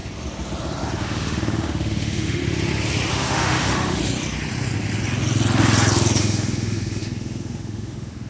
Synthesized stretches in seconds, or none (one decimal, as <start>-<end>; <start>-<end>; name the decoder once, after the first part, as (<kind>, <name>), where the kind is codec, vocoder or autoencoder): 1.0-2.4 (autoencoder, DAC-VAE); 3.1-4.0; 6.2-8.3